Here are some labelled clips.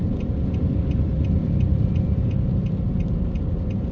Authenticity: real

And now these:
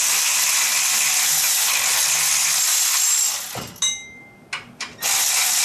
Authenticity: real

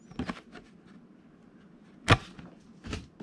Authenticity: real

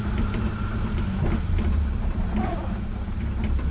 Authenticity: fake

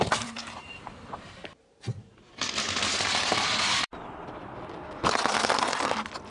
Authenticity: fake